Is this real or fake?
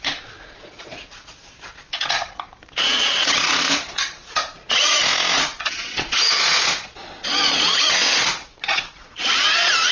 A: fake